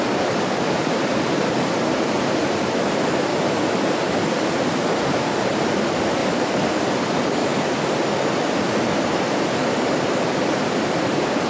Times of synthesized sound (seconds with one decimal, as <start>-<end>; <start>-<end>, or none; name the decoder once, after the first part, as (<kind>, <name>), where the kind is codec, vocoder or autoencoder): 0.0-3.3 (vocoder, BigVGAN v2); 3.8-6.2; 6.7-7.4; 9.5-11.5